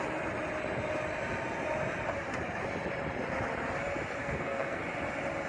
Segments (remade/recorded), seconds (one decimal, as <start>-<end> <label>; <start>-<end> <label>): 0.0-4.2 recorded; 4.2-4.8 remade; 4.8-5.5 recorded